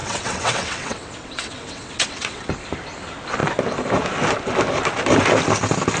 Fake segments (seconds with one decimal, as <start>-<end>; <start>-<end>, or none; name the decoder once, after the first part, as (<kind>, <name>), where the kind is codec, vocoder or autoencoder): 0.0-2.5 (vocoder, WaveNeXt)

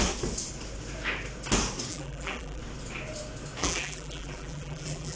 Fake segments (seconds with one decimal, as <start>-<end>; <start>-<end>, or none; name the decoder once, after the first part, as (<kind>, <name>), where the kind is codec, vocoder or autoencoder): 1.9-2.6 (vocoder, BigVGAN v2); 3.6-5.2

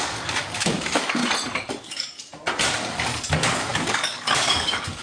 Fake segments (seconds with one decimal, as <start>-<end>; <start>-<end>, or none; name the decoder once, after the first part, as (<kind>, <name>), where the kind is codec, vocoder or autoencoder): 0.0-1.2 (codec, DAC); 1.8-2.3; 2.8-5.0

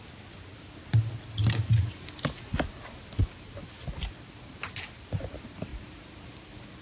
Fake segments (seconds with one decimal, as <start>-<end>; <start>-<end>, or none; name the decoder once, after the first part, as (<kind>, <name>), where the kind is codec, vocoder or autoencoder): none